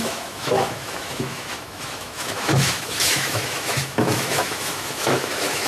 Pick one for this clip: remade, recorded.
remade